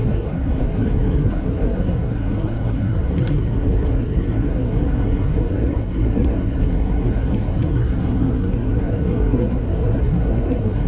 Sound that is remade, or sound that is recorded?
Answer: remade